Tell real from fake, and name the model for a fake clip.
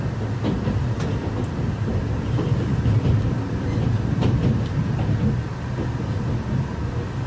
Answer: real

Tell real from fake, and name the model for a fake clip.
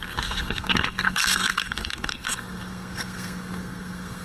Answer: fake, codec, SNAC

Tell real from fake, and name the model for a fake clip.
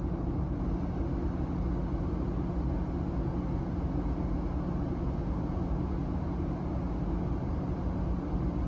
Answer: real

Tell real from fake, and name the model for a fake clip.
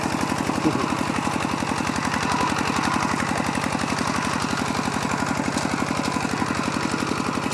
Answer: real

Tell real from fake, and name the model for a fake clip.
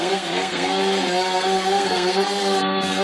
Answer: fake, codec, SNAC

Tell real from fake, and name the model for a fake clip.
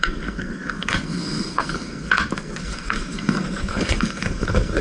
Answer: fake, codec, SNAC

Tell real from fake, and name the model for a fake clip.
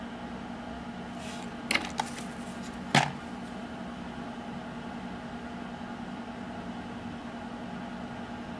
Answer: real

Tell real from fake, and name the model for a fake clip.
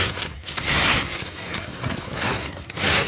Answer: fake, codec, SNAC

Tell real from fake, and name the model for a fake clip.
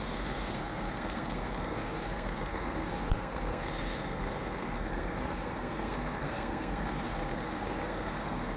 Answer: fake, codec, SNAC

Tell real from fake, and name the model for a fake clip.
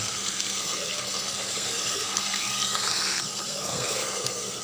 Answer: fake, codec, SNAC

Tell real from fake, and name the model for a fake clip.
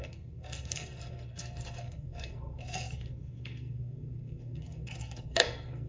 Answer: fake, codec, SNAC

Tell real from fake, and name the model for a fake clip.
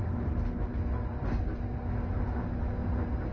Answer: real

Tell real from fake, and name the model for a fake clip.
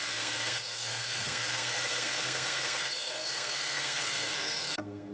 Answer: fake, codec, SNAC